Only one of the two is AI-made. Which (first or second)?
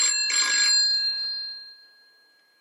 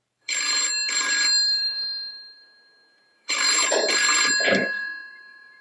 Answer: second